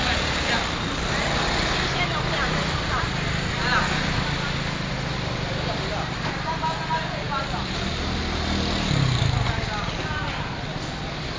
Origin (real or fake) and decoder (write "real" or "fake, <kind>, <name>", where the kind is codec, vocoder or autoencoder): real